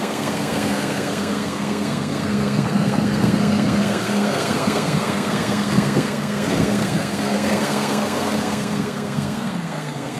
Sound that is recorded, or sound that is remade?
remade